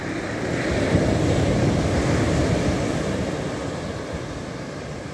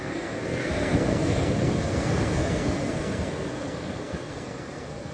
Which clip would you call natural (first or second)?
first